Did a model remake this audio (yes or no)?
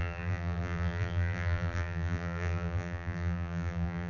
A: yes